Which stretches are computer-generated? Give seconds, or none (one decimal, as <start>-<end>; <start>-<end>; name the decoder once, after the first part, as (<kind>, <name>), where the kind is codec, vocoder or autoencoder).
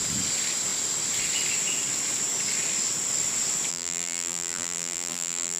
3.7-5.6 (vocoder, BigVGAN v2)